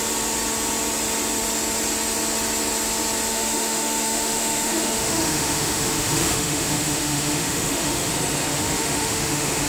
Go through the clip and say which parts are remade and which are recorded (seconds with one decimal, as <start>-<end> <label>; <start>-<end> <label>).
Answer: 0.0-3.3 recorded; 3.3-8.1 remade; 8.1-8.5 recorded; 8.5-9.7 remade

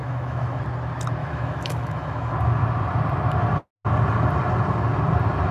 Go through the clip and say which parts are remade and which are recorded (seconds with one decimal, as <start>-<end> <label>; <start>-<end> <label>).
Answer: 0.0-0.6 remade; 0.6-1.2 recorded; 1.2-2.3 remade; 2.3-5.5 recorded

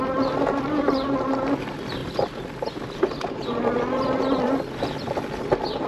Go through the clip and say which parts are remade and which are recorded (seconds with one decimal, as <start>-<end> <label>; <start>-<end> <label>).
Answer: 0.0-5.9 recorded

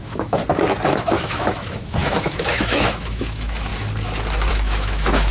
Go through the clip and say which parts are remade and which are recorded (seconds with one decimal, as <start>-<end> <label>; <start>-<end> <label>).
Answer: 0.0-0.4 remade; 0.4-0.9 recorded; 0.9-3.7 remade; 3.7-4.5 recorded; 4.5-5.3 remade

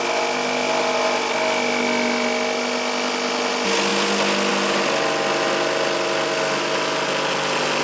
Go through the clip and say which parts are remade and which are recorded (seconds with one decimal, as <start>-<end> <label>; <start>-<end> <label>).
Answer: 0.0-7.8 recorded